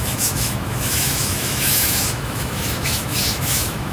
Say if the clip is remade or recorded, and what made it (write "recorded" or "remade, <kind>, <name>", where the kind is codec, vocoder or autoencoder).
remade, autoencoder, DAC-VAE